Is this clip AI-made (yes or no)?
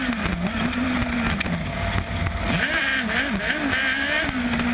no